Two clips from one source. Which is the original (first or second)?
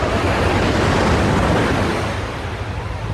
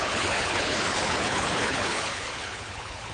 first